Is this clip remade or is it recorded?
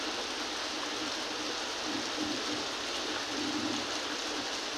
recorded